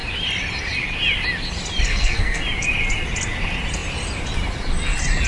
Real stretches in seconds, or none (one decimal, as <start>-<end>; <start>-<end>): 0.0-1.9; 2.4-5.3